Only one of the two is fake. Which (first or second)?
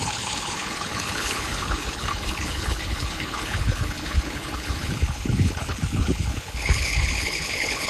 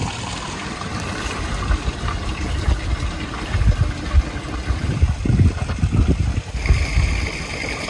first